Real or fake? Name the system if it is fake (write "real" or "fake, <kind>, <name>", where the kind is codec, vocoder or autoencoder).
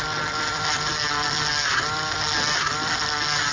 real